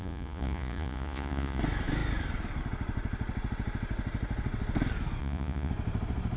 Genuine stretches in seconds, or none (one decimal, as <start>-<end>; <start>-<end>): 1.6-5.2; 5.7-6.4